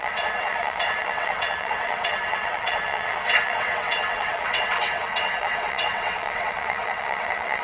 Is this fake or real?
fake